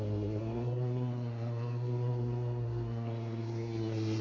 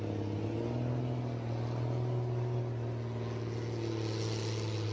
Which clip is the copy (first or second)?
first